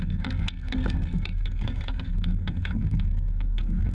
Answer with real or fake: fake